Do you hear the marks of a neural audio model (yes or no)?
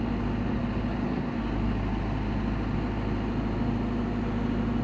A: no